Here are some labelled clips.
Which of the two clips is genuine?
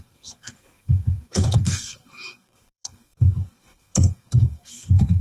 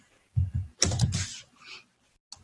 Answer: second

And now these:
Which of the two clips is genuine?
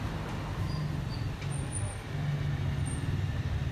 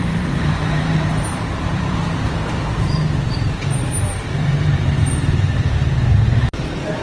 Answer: first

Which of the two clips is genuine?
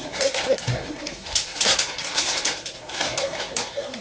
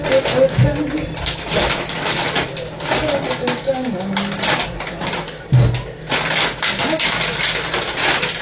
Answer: second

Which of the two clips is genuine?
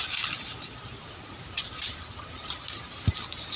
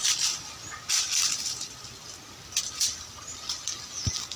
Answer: second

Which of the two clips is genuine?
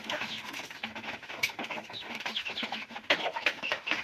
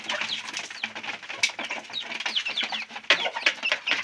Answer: second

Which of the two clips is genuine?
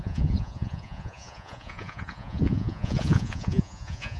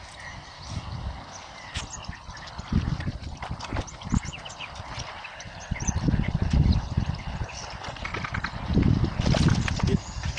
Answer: second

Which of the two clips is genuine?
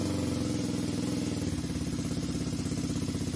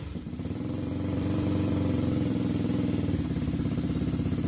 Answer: first